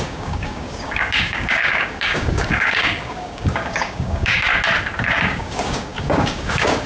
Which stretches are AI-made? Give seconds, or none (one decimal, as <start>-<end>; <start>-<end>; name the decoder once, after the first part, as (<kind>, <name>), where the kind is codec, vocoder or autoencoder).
0.0-4.5 (codec, DAC); 5.0-6.9